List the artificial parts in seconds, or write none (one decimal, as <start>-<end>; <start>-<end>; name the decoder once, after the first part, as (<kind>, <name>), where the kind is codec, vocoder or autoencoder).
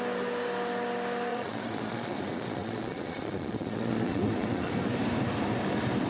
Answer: 1.3-4.7 (vocoder, Vocos)